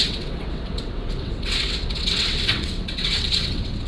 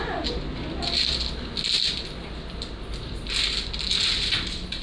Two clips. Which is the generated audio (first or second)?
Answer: first